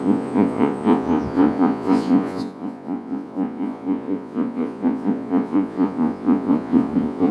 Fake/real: fake